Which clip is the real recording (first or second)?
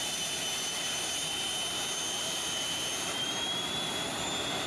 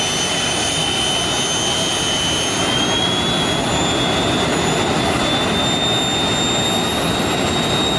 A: second